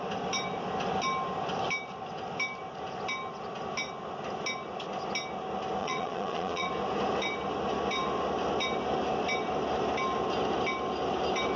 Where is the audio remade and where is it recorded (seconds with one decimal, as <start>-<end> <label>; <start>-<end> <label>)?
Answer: 0.0-5.8 recorded; 5.8-6.7 remade; 6.7-11.6 recorded